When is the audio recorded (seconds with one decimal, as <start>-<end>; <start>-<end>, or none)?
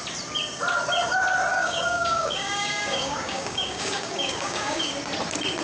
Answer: 0.0-1.5; 4.9-5.6